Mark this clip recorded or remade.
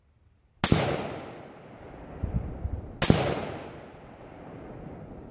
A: recorded